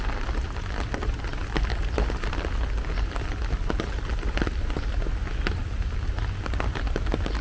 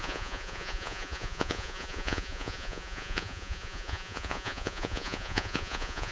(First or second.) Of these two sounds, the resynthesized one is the second